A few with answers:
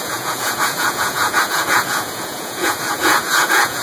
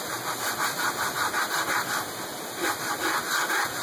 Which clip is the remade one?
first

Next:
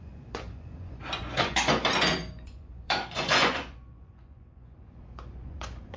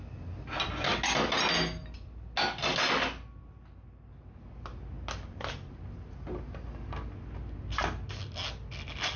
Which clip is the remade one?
first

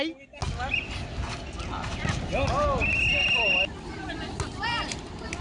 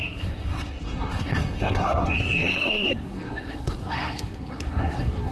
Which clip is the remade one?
second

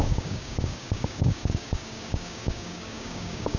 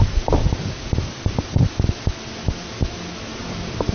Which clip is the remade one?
first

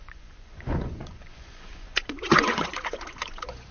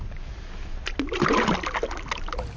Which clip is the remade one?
first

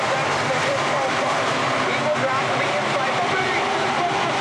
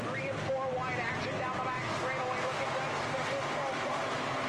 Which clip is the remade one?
first